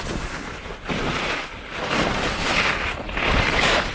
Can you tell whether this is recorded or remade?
recorded